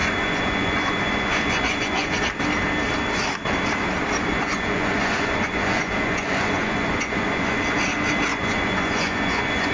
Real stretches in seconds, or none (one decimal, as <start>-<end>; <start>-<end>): 2.2-4.3; 7.6-8.3

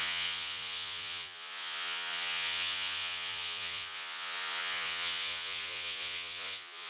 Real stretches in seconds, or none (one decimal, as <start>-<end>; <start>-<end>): none

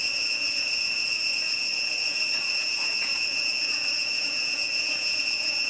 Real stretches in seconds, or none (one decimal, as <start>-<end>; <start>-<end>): none

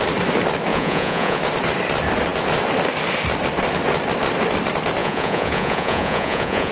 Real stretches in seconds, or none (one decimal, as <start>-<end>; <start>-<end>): 0.0-0.7; 1.4-5.0

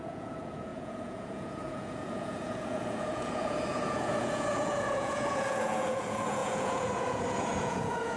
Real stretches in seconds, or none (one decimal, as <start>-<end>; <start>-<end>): none

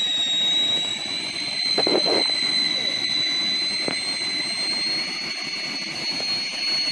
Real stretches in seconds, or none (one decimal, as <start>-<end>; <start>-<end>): 0.0-0.9; 3.2-6.9